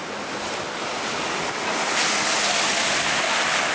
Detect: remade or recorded recorded